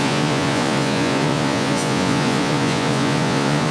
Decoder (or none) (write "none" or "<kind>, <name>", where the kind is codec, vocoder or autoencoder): vocoder, Vocos